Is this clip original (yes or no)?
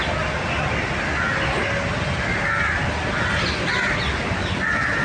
yes